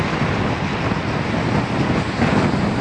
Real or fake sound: real